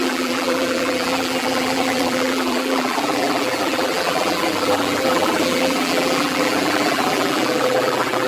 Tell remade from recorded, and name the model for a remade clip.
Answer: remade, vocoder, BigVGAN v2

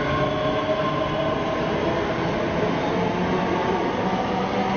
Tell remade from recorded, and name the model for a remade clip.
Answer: recorded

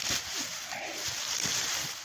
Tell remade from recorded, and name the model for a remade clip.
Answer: recorded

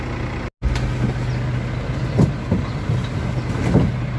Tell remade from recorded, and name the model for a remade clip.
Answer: recorded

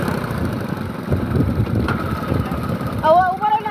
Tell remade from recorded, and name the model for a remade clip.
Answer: recorded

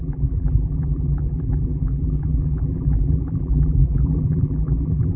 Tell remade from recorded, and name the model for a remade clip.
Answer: remade, vocoder, BigVGAN v2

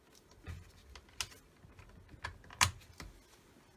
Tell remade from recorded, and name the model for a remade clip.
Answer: recorded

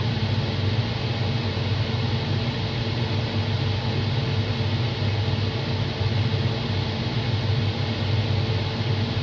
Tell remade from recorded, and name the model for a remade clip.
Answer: recorded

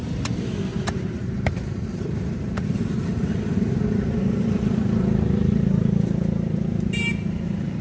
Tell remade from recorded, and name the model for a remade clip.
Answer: remade, vocoder, BigVGAN v2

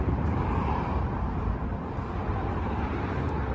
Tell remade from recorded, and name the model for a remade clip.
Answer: remade, vocoder, BigVGAN v2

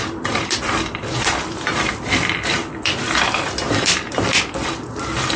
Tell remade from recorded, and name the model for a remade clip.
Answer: remade, vocoder, BigVGAN v2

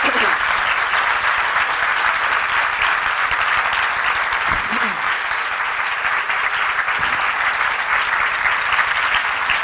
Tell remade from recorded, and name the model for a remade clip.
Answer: recorded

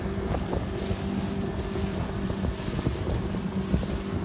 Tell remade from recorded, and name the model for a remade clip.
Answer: recorded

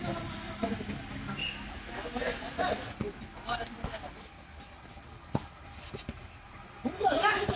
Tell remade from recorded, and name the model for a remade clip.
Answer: recorded